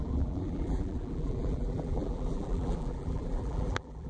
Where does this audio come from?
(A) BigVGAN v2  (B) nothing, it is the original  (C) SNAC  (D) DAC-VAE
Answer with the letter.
A